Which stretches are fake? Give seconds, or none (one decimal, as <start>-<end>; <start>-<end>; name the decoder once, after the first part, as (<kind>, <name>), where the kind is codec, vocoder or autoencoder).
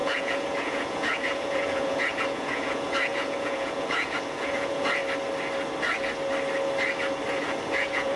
0.0-5.0 (vocoder, Vocos); 7.3-8.2